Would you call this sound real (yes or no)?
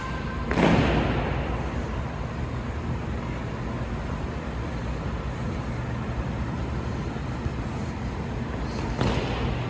yes